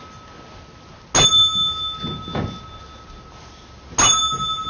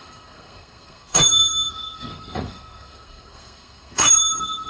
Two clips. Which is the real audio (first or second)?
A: first